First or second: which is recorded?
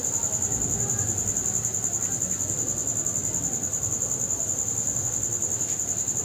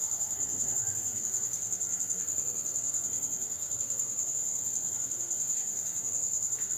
first